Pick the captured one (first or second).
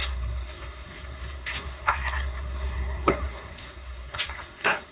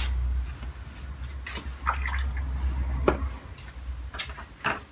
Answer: second